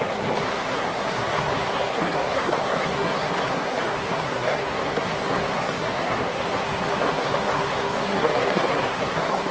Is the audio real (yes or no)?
no